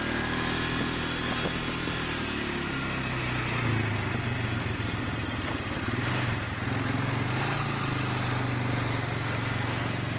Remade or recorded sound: recorded